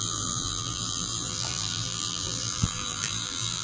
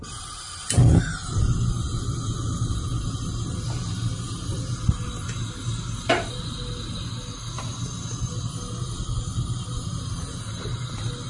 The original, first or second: second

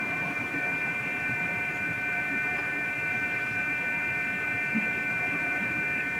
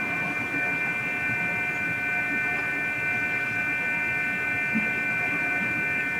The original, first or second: second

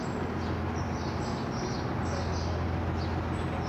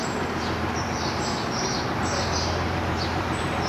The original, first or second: first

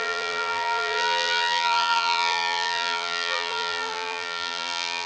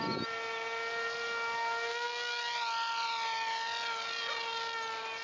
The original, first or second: second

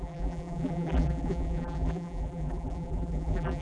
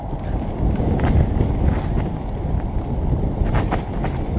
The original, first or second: second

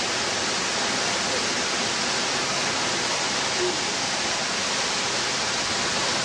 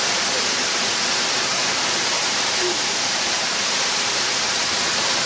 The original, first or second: first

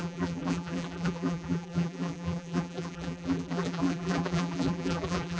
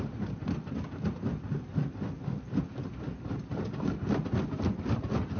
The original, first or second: second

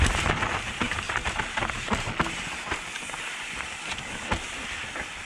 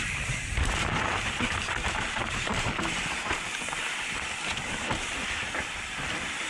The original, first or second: first